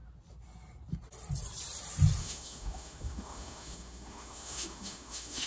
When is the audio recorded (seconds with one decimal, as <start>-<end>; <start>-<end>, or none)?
0.0-2.2

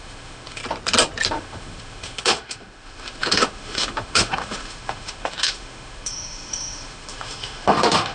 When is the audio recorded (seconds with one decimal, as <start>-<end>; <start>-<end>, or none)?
0.6-1.3

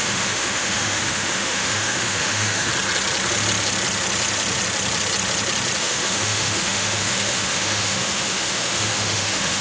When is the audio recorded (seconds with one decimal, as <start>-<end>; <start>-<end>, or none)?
2.7-5.8

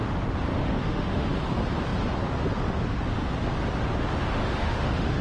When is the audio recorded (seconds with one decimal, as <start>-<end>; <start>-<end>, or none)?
0.0-0.5; 1.3-4.4